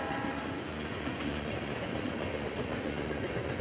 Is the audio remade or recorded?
remade